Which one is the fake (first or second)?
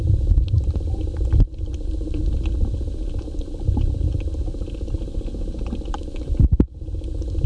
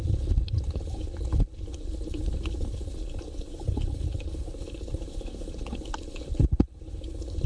second